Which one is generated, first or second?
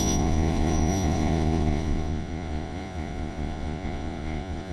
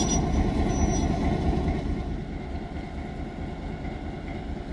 first